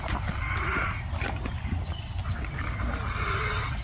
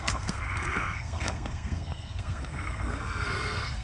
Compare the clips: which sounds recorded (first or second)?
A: first